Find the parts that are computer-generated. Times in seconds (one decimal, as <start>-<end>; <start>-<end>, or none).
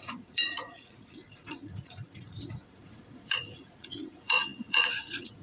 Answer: 0.0-5.4